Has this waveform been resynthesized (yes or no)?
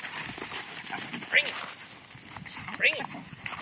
no